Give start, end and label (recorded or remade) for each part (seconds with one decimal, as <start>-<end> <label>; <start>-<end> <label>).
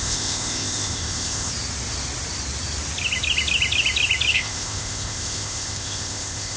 0.0-1.5 remade; 1.5-4.3 recorded; 4.3-6.6 remade